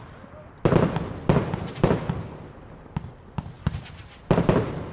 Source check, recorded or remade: recorded